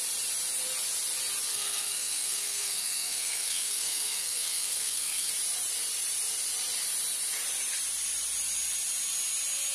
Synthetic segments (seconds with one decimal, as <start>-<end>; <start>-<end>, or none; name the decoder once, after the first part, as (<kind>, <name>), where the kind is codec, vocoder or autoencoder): 1.5-5.3 (codec, SNAC)